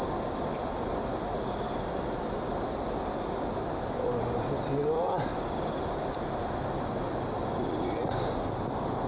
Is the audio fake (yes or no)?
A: no